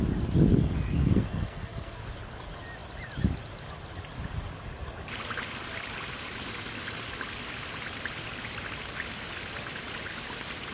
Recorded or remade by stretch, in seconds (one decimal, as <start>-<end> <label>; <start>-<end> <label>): 0.0-0.5 recorded; 0.5-2.1 remade; 2.1-10.7 recorded